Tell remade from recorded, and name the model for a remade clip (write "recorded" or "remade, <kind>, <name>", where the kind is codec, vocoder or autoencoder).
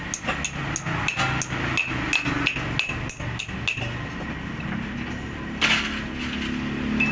recorded